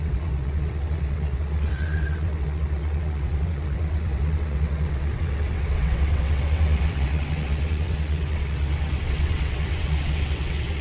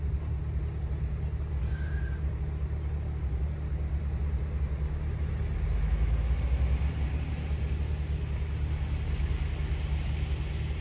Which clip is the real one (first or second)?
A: second